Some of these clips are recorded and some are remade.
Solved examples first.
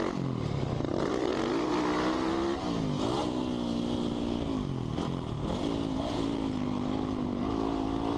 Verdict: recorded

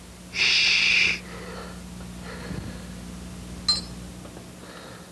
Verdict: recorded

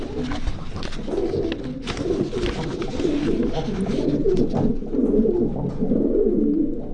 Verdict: recorded